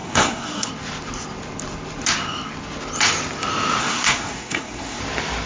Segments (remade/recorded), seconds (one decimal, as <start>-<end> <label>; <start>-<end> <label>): 0.0-0.7 remade; 0.7-3.8 recorded; 3.8-5.0 remade; 5.0-5.5 recorded